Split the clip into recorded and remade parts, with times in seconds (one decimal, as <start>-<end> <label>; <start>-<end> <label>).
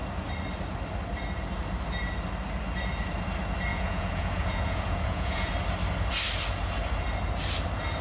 0.0-3.7 recorded; 3.7-5.5 remade; 5.5-8.0 recorded